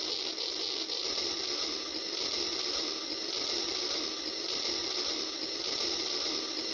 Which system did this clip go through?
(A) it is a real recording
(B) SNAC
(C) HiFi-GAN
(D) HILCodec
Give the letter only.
A